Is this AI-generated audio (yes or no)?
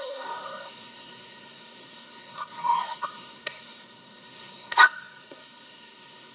yes